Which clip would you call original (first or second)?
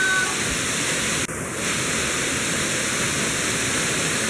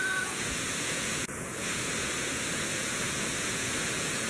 first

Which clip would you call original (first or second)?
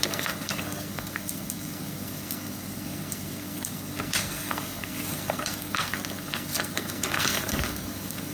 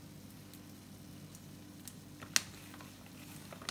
second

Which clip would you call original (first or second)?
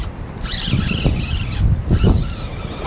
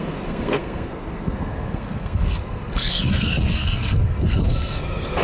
first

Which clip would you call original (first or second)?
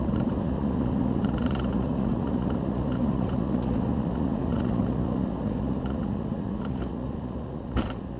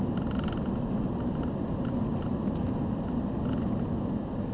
second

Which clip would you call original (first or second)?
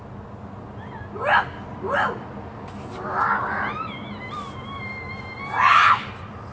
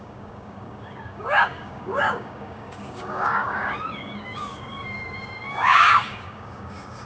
first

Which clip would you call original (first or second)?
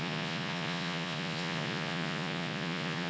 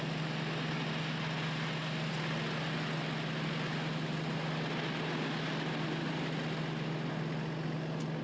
second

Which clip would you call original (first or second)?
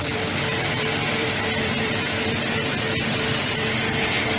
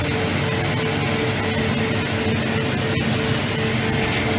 second